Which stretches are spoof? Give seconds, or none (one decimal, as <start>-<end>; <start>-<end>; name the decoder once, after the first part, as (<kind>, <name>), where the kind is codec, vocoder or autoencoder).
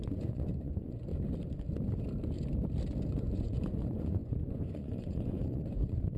0.0-1.1 (vocoder, Vocos); 3.1-6.2